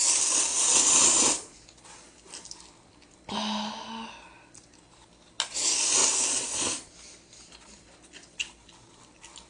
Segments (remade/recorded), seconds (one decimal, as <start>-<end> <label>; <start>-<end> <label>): 0.0-9.5 recorded